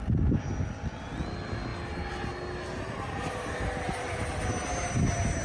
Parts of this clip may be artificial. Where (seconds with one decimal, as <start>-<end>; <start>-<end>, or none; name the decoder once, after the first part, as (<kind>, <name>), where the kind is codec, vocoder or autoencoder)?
none